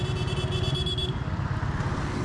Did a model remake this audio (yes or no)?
no